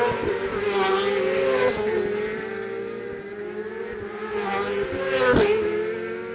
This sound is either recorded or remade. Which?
recorded